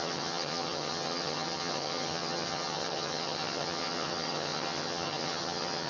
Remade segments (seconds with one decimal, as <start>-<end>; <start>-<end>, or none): 0.0-5.9